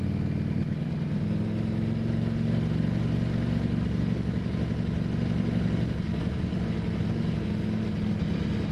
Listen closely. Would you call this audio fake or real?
real